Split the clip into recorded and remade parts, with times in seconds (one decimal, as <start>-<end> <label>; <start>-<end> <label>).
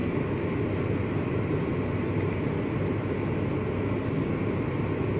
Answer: 0.0-5.2 recorded